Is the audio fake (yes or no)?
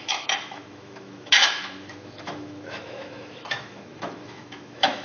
yes